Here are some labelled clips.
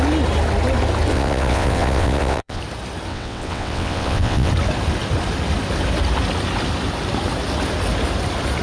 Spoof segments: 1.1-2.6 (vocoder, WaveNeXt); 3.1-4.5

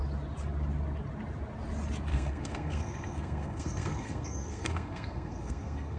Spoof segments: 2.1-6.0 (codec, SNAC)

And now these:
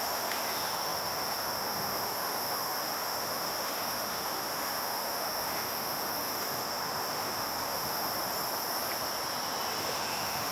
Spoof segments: 0.0-8.1 (autoencoder, DAC-VAE); 9.8-10.5